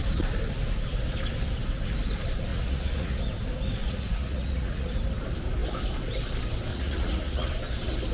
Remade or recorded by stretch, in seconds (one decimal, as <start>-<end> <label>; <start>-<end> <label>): 0.0-2.5 recorded; 2.5-3.2 remade; 3.2-3.8 recorded; 3.8-4.9 remade; 4.9-6.7 recorded; 6.7-7.5 remade; 7.5-8.1 recorded